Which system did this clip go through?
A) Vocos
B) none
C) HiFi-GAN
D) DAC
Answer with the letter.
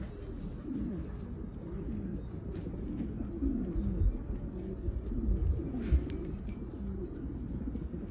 B